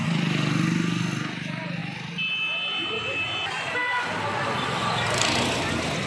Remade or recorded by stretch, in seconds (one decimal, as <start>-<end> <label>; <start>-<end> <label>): 0.0-6.1 recorded